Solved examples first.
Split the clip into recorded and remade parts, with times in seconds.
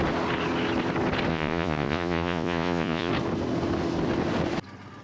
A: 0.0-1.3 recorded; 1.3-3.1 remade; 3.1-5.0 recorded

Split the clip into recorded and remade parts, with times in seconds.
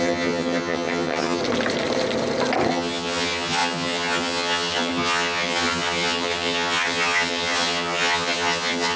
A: 0.0-1.4 remade; 1.4-2.7 recorded; 2.7-9.0 remade